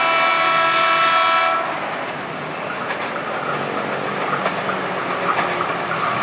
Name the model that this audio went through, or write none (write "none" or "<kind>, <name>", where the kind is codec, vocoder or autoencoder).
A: none